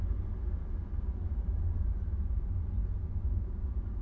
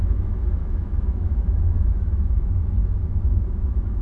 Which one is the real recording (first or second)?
first